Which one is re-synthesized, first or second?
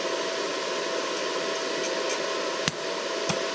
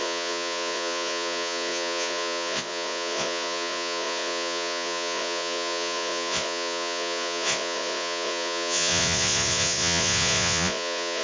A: second